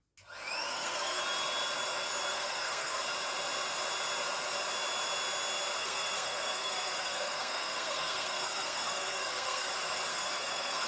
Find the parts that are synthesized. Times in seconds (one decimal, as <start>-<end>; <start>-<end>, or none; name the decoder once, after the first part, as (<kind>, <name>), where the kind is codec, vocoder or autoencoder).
0.7-1.2 (codec, SNAC); 2.3-3.0; 5.8-9.7; 10.1-10.9